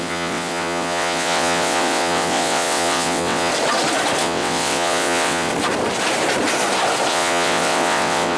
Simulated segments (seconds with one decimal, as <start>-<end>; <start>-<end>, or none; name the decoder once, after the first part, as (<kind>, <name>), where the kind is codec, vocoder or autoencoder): 0.0-3.5 (vocoder, WaveNeXt); 4.2-5.5; 7.1-8.4

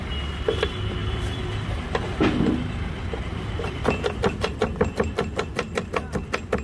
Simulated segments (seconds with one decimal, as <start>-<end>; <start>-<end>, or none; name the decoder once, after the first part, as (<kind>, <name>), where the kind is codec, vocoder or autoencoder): 1.0-2.2 (vocoder, BigVGAN v2); 3.3-4.9

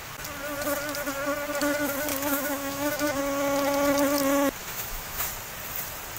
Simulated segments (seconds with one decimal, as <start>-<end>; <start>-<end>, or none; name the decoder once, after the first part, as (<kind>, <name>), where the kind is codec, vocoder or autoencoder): 2.1-3.2 (autoencoder, DAC-VAE); 4.6-5.3